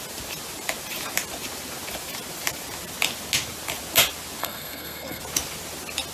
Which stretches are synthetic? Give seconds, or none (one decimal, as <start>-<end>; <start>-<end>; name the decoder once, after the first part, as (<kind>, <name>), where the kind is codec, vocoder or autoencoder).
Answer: 4.4-5.2 (codec, SNAC)